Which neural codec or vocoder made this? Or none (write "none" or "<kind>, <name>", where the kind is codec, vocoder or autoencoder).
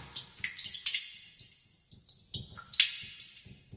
none